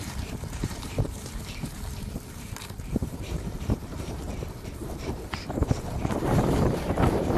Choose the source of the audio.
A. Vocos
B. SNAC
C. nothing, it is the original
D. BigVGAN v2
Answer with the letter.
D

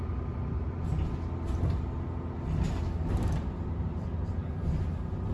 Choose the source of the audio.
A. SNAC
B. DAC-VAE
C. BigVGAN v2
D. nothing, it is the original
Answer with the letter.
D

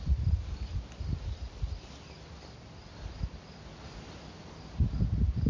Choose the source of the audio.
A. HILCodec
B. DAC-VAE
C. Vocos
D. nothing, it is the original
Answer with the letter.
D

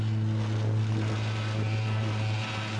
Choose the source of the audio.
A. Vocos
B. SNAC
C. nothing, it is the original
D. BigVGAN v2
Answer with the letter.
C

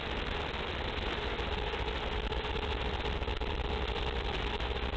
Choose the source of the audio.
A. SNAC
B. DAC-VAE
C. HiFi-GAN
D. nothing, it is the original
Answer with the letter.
D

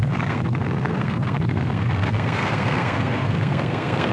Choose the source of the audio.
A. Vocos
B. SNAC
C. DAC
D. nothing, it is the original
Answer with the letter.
B